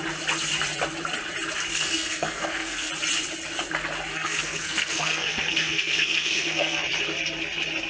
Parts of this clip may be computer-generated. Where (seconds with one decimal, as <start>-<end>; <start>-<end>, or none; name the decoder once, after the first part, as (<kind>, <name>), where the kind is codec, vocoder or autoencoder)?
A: 1.7-2.9 (codec, SNAC); 4.1-6.8